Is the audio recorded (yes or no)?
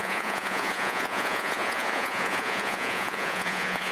no